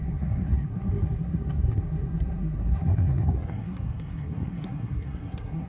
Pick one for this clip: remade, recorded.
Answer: remade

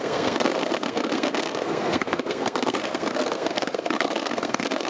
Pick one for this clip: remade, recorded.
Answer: remade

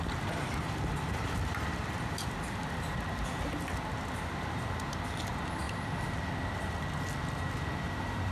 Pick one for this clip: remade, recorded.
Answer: recorded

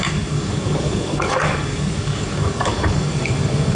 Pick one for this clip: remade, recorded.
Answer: remade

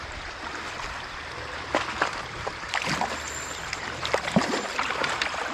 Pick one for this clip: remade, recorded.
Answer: remade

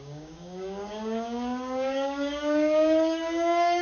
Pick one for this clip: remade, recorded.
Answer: remade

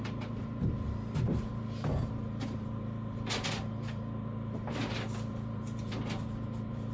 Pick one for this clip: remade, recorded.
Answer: remade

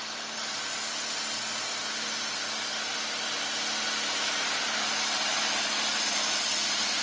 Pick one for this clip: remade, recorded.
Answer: recorded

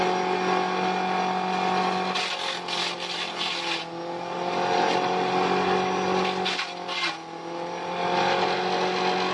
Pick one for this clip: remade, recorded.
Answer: recorded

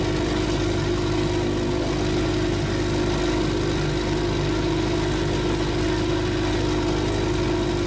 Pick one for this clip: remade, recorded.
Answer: recorded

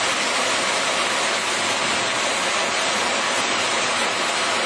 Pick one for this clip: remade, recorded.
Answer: recorded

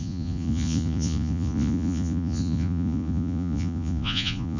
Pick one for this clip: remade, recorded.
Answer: remade